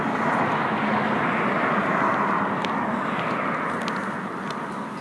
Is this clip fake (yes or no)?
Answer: no